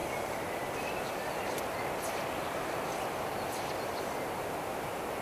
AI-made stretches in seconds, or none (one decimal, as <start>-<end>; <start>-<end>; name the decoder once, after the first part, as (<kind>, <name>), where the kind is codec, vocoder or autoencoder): none